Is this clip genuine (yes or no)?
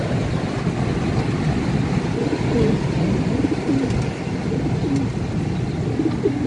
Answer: yes